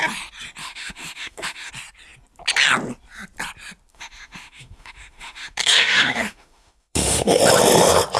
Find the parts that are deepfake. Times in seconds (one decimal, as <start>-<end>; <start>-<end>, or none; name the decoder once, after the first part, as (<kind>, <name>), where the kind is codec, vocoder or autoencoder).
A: 0.6-1.7 (autoencoder, DAC-VAE); 3.9-7.4